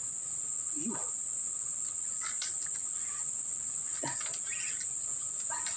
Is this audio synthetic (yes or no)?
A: no